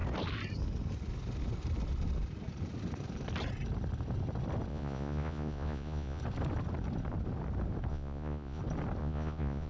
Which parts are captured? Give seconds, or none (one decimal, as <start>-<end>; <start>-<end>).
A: 0.0-4.7; 6.2-7.9; 8.6-9.0